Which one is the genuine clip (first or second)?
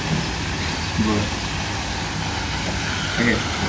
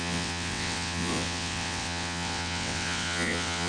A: first